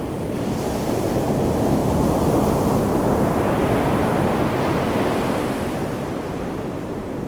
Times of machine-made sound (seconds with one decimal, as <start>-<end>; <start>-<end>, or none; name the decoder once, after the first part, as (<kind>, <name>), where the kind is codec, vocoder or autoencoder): none